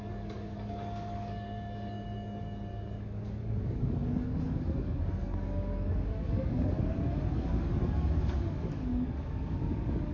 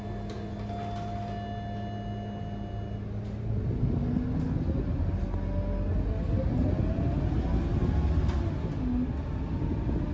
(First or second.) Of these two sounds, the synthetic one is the first